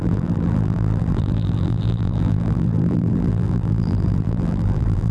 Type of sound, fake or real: fake